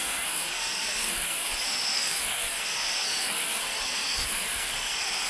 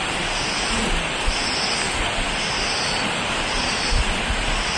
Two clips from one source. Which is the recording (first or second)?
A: second